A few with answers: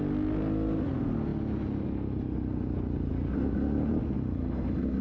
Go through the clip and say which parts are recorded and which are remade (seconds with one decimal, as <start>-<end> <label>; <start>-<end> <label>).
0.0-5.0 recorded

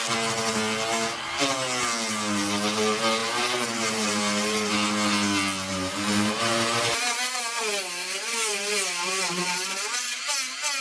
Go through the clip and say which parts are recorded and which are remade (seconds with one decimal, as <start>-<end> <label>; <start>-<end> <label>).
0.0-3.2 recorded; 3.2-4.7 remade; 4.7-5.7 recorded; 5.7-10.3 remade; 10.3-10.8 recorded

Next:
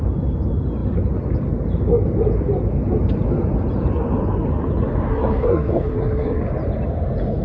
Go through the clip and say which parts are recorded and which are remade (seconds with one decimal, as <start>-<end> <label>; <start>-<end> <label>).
0.0-5.1 recorded; 5.1-6.4 remade; 6.4-7.4 recorded